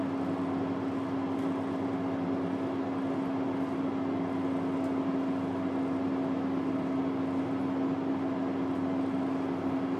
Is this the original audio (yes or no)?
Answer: yes